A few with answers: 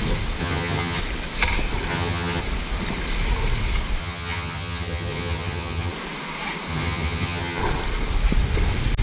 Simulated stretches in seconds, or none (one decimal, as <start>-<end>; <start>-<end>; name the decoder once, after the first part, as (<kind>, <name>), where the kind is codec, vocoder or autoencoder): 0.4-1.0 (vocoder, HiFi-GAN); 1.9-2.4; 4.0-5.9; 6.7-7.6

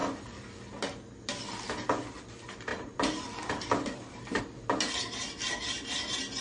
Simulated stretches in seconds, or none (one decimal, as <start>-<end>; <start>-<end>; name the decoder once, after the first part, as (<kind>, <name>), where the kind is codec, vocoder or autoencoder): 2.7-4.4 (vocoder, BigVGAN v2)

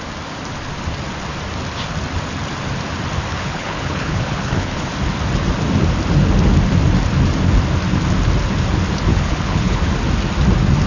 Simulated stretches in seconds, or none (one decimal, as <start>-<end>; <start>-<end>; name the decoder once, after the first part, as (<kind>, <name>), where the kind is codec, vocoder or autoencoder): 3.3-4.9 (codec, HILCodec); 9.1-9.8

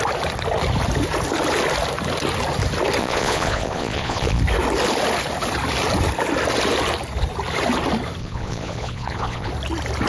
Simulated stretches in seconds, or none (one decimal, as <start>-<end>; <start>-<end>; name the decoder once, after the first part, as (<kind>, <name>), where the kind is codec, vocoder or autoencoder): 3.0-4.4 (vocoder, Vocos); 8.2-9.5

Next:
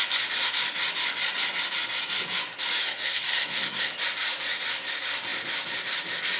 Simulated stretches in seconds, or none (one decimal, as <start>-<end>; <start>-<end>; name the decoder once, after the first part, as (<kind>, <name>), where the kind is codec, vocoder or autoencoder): 2.8-3.9 (codec, SNAC)